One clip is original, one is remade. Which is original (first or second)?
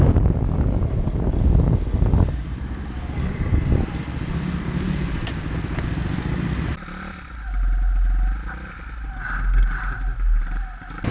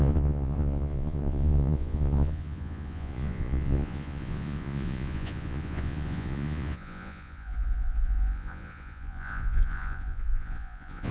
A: first